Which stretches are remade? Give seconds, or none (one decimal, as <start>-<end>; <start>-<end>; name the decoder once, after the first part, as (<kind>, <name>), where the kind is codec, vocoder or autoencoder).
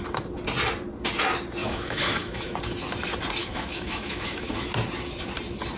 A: 1.6-2.6 (autoencoder, DAC-VAE); 3.4-4.7